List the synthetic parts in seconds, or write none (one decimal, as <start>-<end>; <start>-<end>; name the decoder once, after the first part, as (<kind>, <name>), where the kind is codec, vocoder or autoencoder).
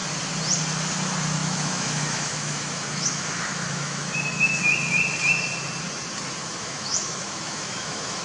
1.4-4.6 (autoencoder, DAC-VAE); 6.4-8.2